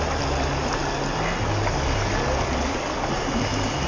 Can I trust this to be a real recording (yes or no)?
yes